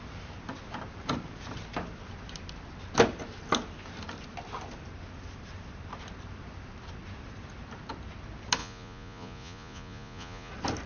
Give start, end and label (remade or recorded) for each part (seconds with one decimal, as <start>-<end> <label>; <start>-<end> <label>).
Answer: 0.0-8.6 recorded; 8.6-10.5 remade; 10.5-10.9 recorded